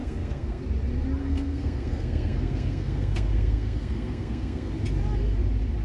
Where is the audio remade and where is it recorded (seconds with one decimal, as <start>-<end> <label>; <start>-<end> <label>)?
0.0-0.6 remade; 0.6-1.2 recorded; 1.2-4.7 remade; 4.7-5.8 recorded